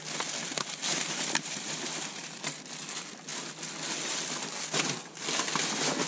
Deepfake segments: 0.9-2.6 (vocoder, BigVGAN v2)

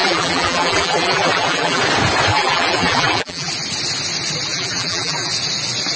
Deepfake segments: 0.0-1.8 (vocoder, BigVGAN v2); 2.3-3.5; 4.5-5.3